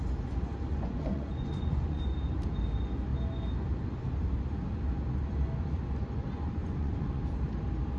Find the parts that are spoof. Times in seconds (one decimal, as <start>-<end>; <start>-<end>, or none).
0.7-2.0; 6.6-7.2